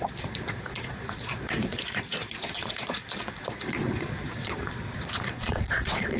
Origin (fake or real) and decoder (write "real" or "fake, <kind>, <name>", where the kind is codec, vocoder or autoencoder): fake, vocoder, Vocos